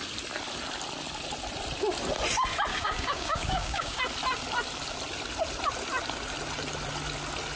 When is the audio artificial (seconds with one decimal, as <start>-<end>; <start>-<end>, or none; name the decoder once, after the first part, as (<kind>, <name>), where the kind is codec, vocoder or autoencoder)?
2.7-4.0 (codec, DAC)